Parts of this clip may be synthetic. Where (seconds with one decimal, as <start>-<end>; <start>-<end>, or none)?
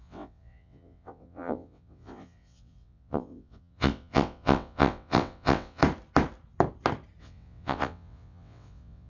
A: 0.0-5.8; 7.2-9.1